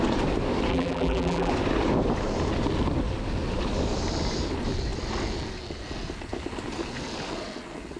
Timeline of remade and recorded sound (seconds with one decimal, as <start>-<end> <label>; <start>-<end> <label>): 0.0-0.7 recorded; 0.7-1.5 remade; 1.5-8.0 recorded